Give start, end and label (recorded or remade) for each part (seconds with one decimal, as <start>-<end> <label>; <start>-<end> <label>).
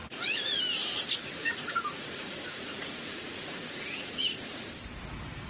0.0-0.6 remade; 0.6-1.4 recorded; 1.4-4.7 remade; 4.7-5.5 recorded